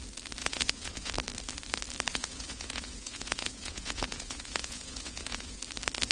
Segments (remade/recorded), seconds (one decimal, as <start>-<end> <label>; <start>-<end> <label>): 0.0-0.4 recorded; 0.4-1.1 remade; 1.1-2.1 recorded; 2.1-5.6 remade; 5.6-6.1 recorded